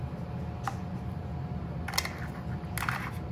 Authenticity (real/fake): real